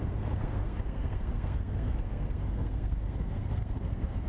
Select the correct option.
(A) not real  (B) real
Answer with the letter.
A